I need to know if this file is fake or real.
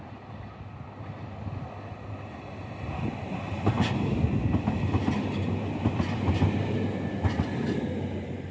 real